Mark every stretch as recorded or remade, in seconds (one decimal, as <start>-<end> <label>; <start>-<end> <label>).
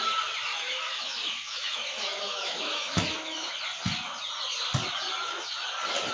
0.0-0.5 recorded; 0.5-3.6 remade; 3.6-6.1 recorded